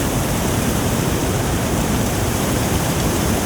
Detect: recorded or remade remade